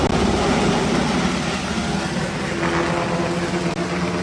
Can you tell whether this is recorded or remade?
recorded